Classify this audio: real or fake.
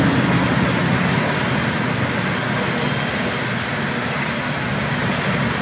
real